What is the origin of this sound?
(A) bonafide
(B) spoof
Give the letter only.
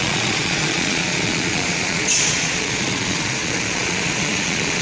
B